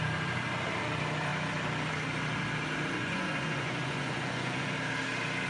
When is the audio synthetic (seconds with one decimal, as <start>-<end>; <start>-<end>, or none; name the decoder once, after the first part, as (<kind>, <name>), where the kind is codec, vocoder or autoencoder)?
3.0-4.7 (vocoder, Vocos)